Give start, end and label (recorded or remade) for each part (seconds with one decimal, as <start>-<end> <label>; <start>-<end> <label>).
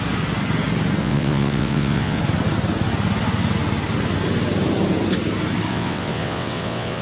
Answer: 0.0-1.0 recorded; 1.0-2.2 remade; 2.2-5.7 recorded; 5.7-7.0 remade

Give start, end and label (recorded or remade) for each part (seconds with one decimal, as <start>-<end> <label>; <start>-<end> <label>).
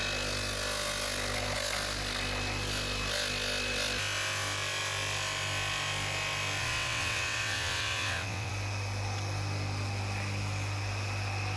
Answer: 0.0-6.6 recorded; 6.6-8.5 remade; 8.5-11.6 recorded